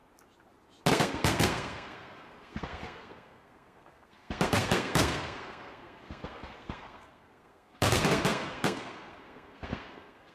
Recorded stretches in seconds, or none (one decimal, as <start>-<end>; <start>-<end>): 0.0-0.9